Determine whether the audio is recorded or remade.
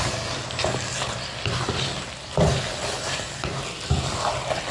recorded